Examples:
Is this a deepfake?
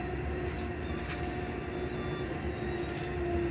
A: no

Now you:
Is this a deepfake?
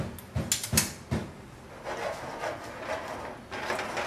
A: no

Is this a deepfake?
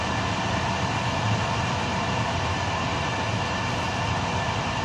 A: no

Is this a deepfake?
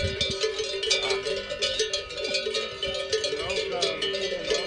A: no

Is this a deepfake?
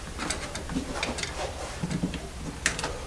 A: yes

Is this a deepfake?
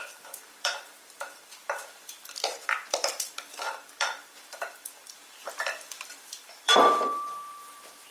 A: yes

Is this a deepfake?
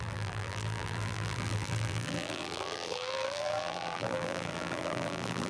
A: yes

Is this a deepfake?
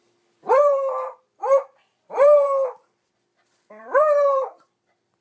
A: yes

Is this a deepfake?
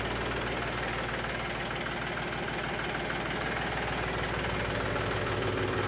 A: no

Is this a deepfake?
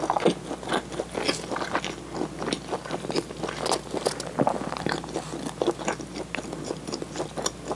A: no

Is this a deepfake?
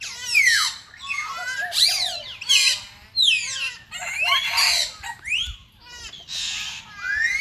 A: no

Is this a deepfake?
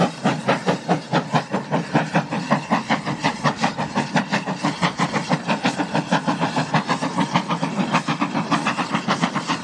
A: yes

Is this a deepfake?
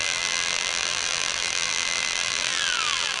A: yes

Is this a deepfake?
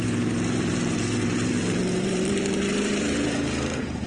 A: yes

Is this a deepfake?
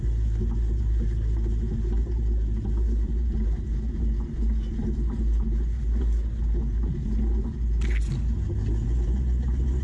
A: no